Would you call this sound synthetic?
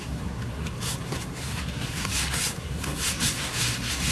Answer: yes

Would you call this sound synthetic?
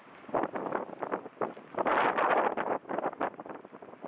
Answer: no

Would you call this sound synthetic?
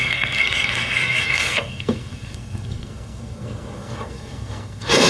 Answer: yes